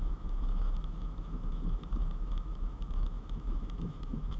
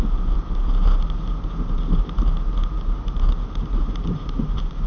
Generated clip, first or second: first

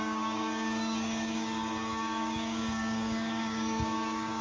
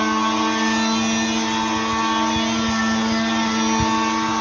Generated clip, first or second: first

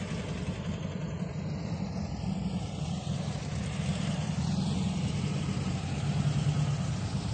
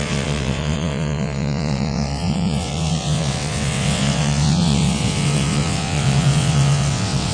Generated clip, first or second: second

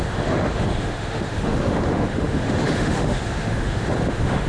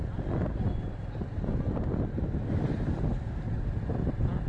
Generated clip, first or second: first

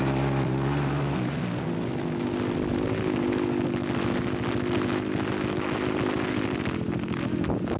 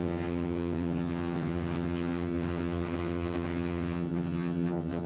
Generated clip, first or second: second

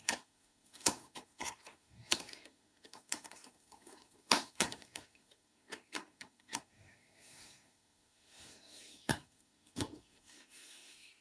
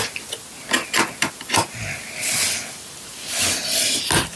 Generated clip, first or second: first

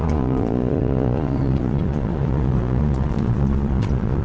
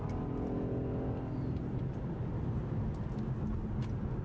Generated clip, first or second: first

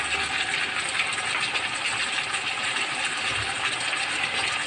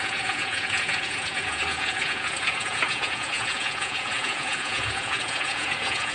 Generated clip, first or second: second